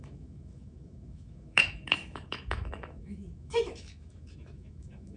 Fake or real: fake